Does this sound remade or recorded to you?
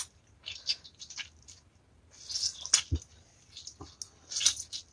recorded